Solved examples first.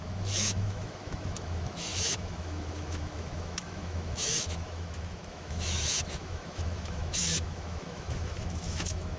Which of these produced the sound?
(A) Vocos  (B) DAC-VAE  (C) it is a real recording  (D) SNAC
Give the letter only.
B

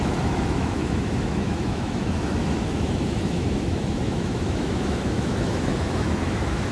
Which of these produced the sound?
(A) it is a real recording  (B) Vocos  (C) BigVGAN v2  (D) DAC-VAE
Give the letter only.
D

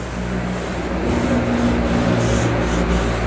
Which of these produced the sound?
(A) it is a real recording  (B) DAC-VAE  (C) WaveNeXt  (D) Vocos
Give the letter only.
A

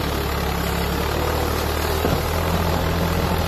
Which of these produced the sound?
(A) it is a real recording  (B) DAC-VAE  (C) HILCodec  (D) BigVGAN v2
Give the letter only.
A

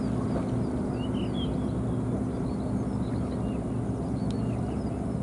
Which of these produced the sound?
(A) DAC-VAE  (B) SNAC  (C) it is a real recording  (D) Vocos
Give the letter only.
C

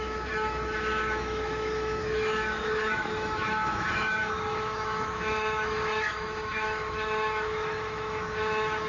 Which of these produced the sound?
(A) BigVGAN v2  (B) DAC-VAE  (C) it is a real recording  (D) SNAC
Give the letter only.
B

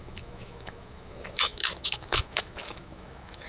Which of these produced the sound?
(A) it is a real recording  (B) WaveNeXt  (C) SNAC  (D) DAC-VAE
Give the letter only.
D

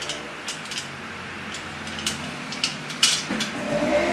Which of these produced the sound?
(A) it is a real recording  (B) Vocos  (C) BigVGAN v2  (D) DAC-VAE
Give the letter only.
A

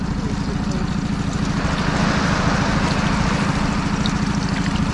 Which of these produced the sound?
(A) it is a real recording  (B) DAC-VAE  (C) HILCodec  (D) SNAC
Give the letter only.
A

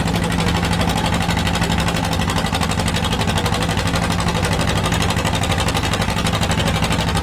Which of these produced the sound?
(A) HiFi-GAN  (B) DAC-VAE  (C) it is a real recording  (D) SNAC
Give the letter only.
C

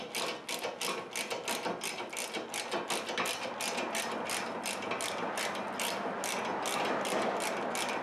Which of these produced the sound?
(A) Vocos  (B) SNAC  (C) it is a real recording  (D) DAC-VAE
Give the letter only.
C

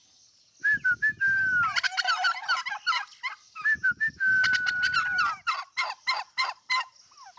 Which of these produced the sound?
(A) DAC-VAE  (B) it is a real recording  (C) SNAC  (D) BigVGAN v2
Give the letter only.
B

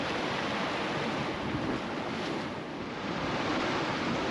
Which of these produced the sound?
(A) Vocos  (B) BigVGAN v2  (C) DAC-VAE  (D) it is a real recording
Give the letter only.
D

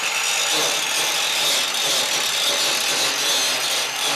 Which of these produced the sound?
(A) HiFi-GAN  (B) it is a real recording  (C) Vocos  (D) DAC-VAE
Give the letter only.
B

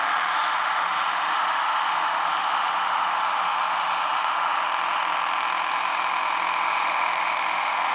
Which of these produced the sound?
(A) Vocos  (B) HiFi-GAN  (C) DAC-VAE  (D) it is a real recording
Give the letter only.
C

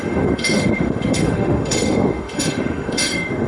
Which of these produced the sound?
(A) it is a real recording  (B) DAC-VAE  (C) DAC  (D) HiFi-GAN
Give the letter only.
B